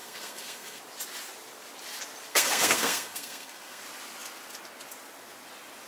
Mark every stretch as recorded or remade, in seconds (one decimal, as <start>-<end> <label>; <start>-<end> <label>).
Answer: 0.0-0.8 remade; 0.8-2.3 recorded; 2.3-3.8 remade; 3.8-5.9 recorded